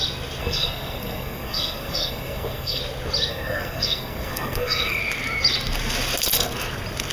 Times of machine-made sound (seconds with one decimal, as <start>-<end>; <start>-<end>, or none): 0.4-2.8; 3.3-5.0